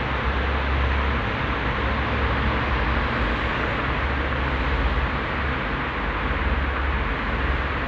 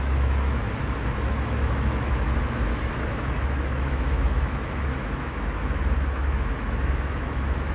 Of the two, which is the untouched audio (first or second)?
first